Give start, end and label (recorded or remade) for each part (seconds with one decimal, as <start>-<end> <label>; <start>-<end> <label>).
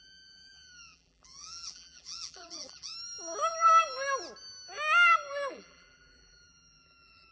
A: 0.0-2.9 remade; 2.9-5.5 recorded; 5.5-7.3 remade